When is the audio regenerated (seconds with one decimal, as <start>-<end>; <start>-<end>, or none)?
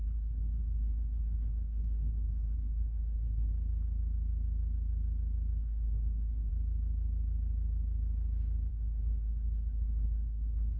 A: 0.0-3.5; 5.6-6.5; 8.7-10.8